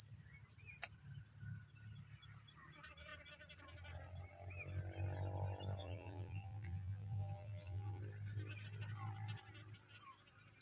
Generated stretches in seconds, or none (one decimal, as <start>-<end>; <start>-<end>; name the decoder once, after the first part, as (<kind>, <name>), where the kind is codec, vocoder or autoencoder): 5.8-8.0 (vocoder, BigVGAN v2)